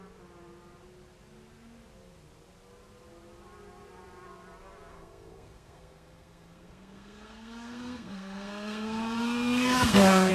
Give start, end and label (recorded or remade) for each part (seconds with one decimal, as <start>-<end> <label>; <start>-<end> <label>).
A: 0.0-4.9 recorded; 4.9-10.3 remade